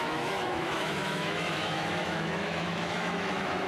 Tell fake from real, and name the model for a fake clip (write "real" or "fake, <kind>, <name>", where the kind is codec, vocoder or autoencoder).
fake, autoencoder, DAC-VAE